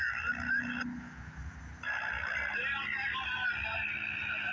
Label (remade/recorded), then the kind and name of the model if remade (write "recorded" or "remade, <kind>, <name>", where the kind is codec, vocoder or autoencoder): recorded